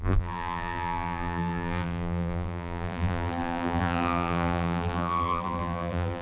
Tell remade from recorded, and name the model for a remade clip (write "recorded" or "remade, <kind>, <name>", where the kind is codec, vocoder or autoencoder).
remade, vocoder, BigVGAN v2